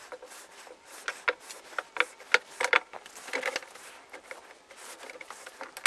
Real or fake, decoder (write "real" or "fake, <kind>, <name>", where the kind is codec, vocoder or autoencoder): real